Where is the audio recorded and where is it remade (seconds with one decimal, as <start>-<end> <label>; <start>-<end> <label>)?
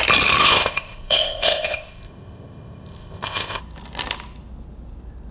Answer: 0.0-0.4 recorded; 0.4-3.6 remade; 3.6-5.3 recorded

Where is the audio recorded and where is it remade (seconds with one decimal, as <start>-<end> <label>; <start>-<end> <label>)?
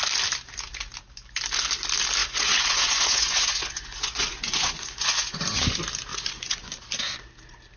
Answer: 0.0-2.2 recorded; 2.2-5.4 remade; 5.4-6.1 recorded; 6.1-6.7 remade; 6.7-7.8 recorded